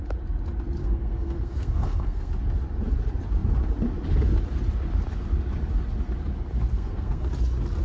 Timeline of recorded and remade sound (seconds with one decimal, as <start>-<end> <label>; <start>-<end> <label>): 0.0-0.8 recorded; 0.8-2.3 remade; 2.3-6.7 recorded; 6.7-7.3 remade; 7.3-7.8 recorded